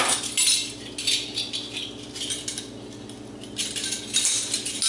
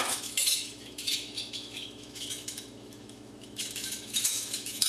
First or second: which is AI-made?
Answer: second